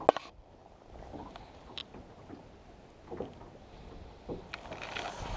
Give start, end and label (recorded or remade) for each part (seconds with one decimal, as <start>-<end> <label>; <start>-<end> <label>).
0.0-5.4 recorded